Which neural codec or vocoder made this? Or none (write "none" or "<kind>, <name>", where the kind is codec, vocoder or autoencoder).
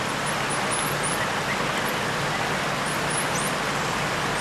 none